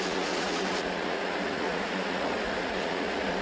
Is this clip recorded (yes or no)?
no